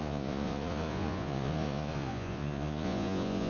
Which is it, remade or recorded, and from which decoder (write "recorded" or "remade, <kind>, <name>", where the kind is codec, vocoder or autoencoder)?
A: remade, vocoder, Vocos